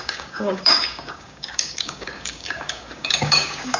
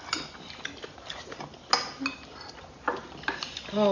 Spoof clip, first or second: first